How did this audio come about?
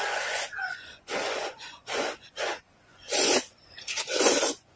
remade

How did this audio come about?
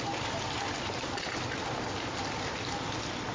recorded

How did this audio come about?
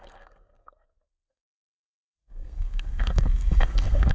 remade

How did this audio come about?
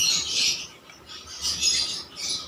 recorded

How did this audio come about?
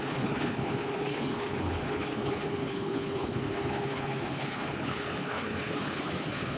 remade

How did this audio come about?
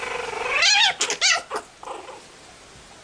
recorded